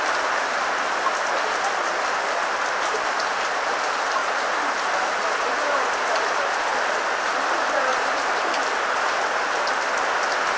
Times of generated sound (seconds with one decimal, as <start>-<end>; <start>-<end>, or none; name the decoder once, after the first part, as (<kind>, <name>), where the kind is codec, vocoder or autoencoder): 4.2-4.8 (vocoder, BigVGAN v2); 7.9-8.7